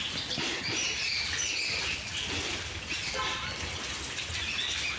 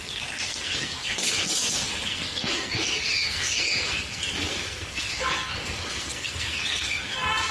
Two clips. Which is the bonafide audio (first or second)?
first